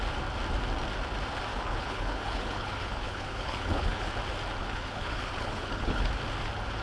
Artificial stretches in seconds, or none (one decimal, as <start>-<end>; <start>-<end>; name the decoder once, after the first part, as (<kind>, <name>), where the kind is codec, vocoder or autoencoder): 1.5-4.1 (codec, HILCodec); 4.6-6.1